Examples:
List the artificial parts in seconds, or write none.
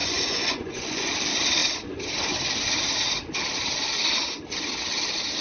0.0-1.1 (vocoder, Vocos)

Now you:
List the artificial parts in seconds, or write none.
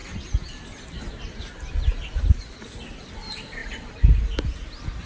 none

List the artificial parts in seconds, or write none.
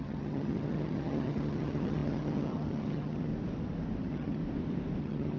0.0-3.3 (vocoder, HiFi-GAN); 4.0-4.4; 5.0-5.4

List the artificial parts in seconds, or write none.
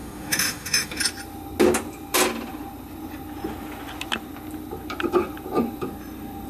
0.0-1.0 (autoencoder, DAC-VAE)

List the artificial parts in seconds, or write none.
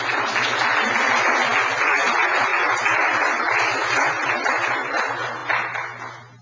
none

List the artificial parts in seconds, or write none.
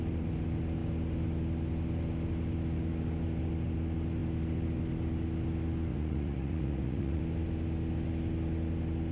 5.9-7.2 (vocoder, Vocos)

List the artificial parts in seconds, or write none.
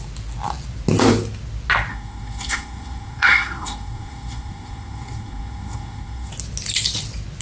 1.9-6.3 (codec, SNAC)